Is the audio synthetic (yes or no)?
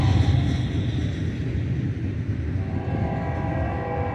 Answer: no